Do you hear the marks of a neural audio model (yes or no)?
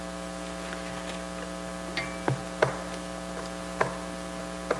no